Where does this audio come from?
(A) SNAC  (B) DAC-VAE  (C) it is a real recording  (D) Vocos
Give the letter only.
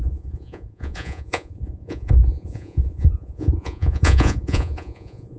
D